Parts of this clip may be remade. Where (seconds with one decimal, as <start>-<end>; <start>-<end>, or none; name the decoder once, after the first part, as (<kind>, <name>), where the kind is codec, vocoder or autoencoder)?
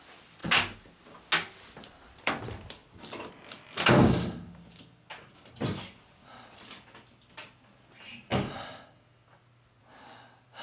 0.0-0.4 (vocoder, BigVGAN v2); 2.2-2.8; 5.5-8.3; 9.8-10.6